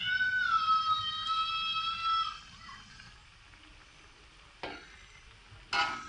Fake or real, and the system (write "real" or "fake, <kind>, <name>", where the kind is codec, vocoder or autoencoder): real